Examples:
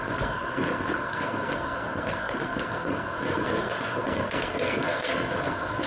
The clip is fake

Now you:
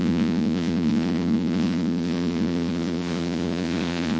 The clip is fake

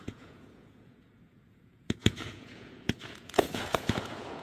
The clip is fake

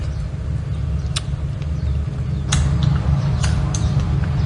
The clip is real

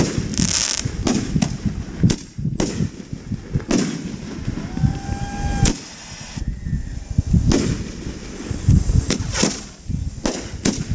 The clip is real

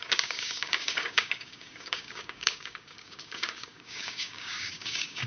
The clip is fake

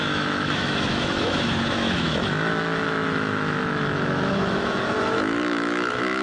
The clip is fake